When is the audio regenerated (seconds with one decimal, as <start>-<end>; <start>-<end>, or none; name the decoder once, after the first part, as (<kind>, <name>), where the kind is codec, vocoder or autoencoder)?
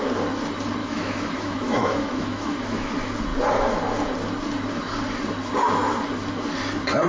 0.8-2.9 (autoencoder, DAC-VAE)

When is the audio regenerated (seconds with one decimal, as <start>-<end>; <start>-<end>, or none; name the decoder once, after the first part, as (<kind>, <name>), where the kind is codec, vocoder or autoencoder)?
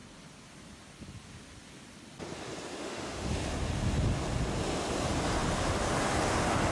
2.8-3.3 (autoencoder, DAC-VAE)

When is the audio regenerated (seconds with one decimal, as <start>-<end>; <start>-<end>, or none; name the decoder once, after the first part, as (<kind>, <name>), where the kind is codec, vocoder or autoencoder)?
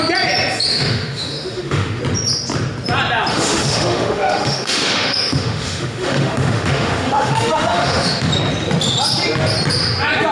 0.7-2.0 (autoencoder, DAC-VAE); 3.3-8.3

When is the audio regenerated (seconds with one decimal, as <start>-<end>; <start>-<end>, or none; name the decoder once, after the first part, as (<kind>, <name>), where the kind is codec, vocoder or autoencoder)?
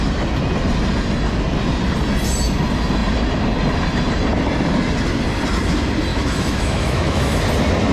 6.1-7.4 (autoencoder, DAC-VAE)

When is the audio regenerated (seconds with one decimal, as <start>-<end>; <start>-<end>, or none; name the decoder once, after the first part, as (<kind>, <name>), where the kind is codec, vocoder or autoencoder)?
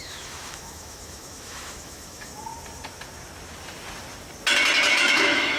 0.0-2.3 (autoencoder, DAC-VAE); 4.9-5.6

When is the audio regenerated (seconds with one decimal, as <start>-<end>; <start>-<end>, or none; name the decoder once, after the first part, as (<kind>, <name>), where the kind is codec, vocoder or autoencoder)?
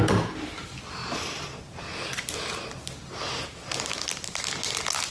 none